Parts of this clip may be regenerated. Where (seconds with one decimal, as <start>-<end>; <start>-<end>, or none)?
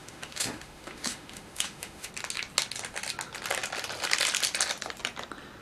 0.0-2.1